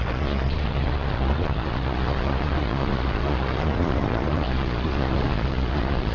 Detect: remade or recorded remade